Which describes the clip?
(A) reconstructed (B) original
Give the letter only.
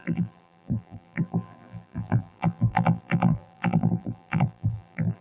A